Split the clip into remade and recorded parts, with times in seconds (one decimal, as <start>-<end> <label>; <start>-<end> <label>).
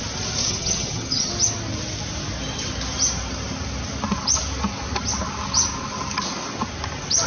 0.0-0.4 recorded; 0.4-1.3 remade; 1.3-7.3 recorded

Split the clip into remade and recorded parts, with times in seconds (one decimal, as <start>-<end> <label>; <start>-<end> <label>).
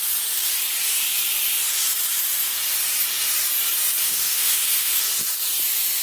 0.0-4.0 recorded; 4.0-5.0 remade; 5.0-6.0 recorded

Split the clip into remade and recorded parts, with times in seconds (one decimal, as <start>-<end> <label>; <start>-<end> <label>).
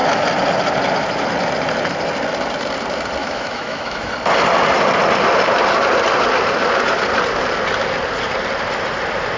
0.0-3.2 recorded; 3.2-4.1 remade; 4.1-9.4 recorded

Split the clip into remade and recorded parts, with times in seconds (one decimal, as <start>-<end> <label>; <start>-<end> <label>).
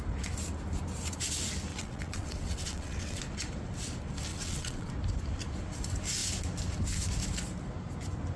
0.0-1.7 recorded; 1.7-3.2 remade; 3.2-4.3 recorded; 4.3-4.9 remade; 4.9-8.4 recorded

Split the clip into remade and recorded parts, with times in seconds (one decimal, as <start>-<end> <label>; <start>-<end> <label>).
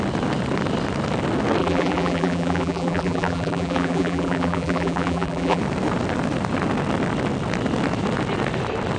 0.0-1.6 recorded; 1.6-5.6 remade; 5.6-9.0 recorded